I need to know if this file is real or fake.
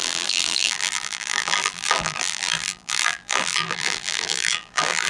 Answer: fake